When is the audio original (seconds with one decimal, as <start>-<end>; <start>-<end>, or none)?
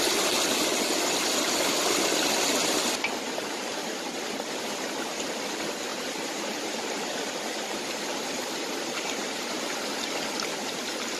0.0-5.9; 9.6-11.2